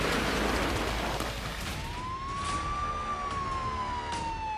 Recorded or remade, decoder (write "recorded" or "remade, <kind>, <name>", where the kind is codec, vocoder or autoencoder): recorded